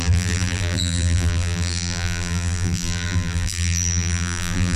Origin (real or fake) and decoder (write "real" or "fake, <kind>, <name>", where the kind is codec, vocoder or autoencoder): fake, vocoder, BigVGAN v2